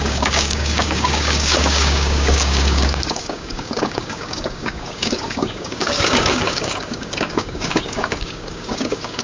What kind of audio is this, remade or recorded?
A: remade